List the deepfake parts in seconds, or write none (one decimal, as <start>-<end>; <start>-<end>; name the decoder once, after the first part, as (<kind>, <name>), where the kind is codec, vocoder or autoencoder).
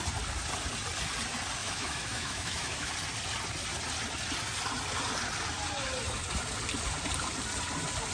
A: 1.6-2.9 (autoencoder, DAC-VAE)